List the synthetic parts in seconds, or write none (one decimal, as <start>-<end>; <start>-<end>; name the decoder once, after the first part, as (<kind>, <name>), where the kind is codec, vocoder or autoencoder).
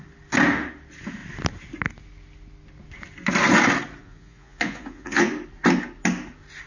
4.0-5.3 (vocoder, Vocos)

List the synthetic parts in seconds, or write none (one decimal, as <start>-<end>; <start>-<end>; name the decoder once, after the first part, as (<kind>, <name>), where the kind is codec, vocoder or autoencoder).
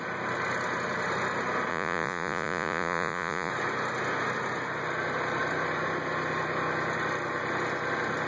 1.7-3.5 (vocoder, Vocos)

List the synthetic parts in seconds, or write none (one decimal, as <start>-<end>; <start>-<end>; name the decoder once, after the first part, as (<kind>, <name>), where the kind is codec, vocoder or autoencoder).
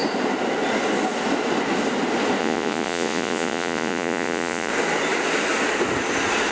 2.4-4.7 (vocoder, Vocos)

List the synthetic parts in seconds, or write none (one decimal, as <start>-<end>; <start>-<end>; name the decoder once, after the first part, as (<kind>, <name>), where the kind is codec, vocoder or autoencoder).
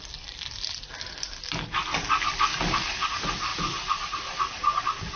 none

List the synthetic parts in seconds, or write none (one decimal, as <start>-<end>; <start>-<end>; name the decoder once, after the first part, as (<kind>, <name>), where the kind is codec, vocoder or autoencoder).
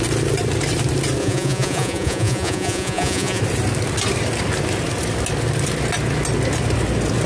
1.2-3.4 (vocoder, Vocos)